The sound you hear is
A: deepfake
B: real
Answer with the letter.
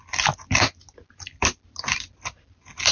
B